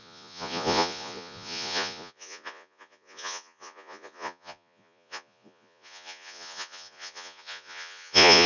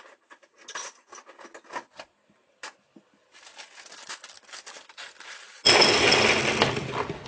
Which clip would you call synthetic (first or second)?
first